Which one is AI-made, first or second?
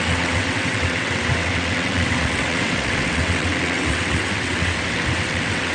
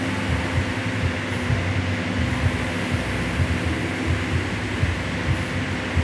first